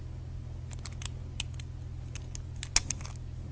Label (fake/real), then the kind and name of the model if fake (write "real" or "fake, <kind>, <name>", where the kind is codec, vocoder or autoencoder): real